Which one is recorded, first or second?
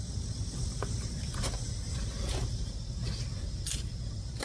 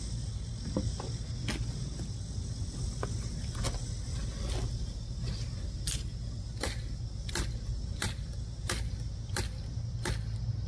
second